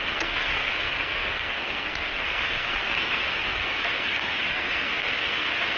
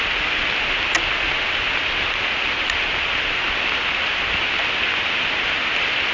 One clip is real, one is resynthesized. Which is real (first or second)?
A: second